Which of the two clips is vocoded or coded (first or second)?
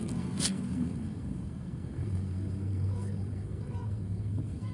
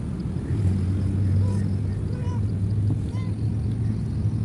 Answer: first